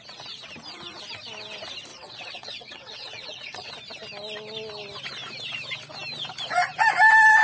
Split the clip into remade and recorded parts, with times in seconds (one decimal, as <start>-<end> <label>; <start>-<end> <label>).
0.0-1.9 recorded; 1.9-3.7 remade; 3.7-7.4 recorded